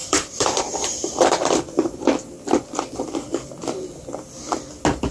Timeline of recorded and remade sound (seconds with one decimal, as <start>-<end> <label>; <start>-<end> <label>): 0.0-2.1 remade; 2.1-5.1 recorded